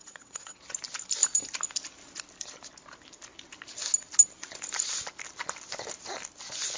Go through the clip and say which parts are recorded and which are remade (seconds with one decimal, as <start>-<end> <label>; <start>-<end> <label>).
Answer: 0.0-0.6 remade; 0.6-6.8 recorded